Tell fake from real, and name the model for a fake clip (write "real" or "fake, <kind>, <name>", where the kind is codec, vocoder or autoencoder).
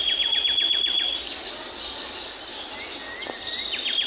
real